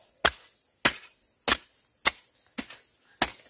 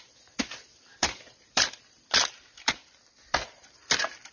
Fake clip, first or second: second